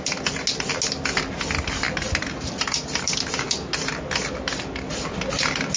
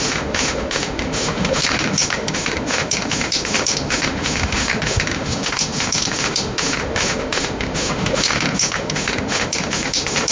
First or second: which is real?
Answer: first